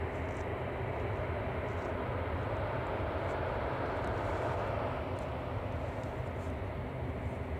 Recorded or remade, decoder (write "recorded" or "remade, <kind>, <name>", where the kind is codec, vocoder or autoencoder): recorded